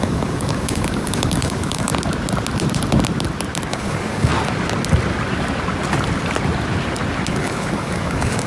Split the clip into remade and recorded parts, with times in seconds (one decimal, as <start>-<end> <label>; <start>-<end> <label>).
0.0-1.9 remade; 1.9-3.7 recorded; 3.7-4.3 remade; 4.3-7.3 recorded; 7.3-8.5 remade